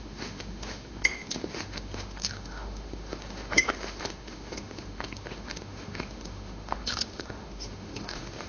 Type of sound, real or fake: fake